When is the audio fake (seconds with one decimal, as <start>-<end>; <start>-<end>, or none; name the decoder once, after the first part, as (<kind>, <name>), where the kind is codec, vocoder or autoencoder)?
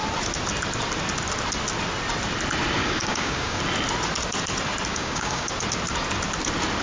2.8-3.6 (codec, DAC); 4.9-5.5